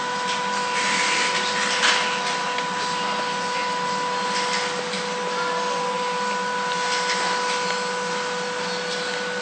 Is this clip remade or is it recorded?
recorded